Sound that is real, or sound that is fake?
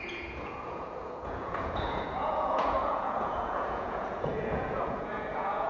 fake